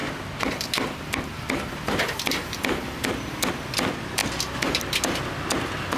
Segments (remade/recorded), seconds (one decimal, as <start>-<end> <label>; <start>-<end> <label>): 0.0-6.0 recorded